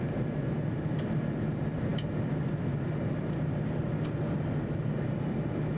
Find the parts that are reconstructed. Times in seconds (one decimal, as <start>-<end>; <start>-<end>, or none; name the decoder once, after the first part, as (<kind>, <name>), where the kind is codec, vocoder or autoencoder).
none

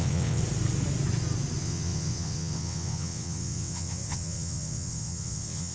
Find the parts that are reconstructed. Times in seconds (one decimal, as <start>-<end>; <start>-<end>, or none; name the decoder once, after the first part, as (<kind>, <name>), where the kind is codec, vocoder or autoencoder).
0.0-0.4 (vocoder, WaveNeXt); 1.6-5.7

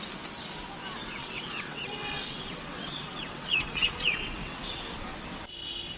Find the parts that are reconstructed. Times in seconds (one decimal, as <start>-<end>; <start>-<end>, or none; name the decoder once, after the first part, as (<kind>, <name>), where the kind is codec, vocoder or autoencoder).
1.2-4.8 (vocoder, WaveNeXt)

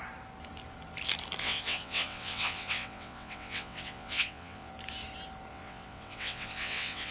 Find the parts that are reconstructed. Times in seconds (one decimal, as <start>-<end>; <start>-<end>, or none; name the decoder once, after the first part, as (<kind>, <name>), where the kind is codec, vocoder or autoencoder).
1.4-4.7 (vocoder, WaveNeXt); 5.5-7.1

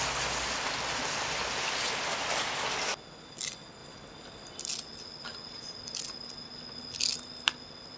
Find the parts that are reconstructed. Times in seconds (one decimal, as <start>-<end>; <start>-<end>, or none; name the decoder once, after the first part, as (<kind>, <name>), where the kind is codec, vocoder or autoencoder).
none

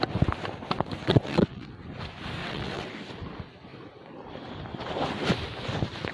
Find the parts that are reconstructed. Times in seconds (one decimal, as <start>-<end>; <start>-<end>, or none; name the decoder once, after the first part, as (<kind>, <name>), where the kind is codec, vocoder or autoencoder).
1.0-1.7 (vocoder, WaveNeXt); 2.4-2.9

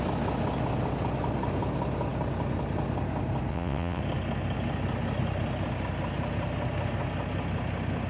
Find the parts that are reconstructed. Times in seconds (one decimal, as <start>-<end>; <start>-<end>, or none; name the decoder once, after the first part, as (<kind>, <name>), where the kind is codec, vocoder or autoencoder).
3.5-4.0 (vocoder, WaveNeXt)